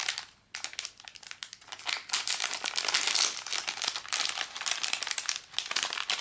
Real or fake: real